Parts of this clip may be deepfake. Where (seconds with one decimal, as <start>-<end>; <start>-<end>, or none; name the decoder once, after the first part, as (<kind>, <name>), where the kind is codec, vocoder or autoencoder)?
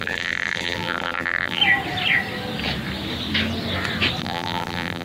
0.0-1.6 (vocoder, BigVGAN v2); 4.2-5.0